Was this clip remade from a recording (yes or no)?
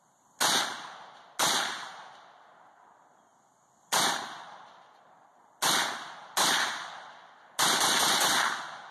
no